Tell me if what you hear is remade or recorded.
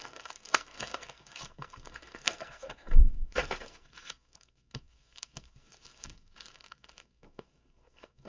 remade